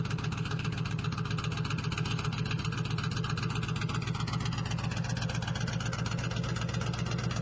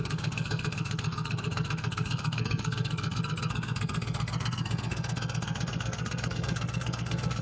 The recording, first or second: first